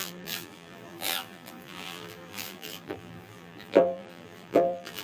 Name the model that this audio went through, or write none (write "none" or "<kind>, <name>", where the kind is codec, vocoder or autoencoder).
vocoder, BigVGAN v2